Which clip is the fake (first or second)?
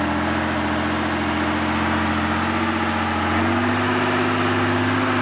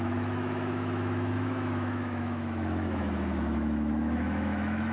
second